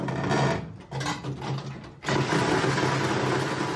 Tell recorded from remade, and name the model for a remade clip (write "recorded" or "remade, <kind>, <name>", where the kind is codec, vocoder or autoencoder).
recorded